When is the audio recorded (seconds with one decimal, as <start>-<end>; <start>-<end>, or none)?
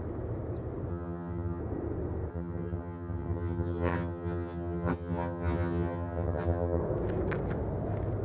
0.0-0.9; 1.6-2.3; 6.8-8.2